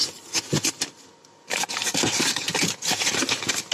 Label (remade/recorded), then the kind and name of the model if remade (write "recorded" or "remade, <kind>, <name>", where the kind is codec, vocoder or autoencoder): recorded